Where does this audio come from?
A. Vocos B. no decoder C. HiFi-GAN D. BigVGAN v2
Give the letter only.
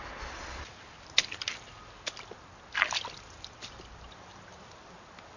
B